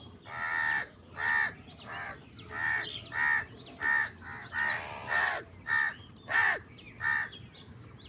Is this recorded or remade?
recorded